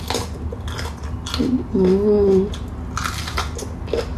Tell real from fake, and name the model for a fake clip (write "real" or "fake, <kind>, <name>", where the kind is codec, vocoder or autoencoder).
real